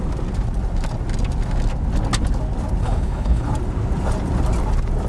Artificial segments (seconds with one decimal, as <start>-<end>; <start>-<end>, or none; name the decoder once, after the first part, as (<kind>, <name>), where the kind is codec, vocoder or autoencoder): 2.8-3.5 (codec, HILCodec)